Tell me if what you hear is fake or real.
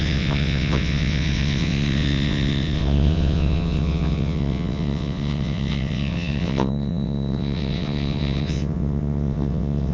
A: fake